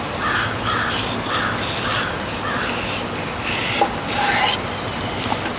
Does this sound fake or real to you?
real